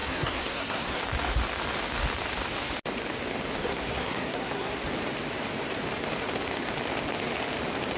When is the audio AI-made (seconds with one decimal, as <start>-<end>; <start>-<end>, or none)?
0.0-1.0; 3.6-4.8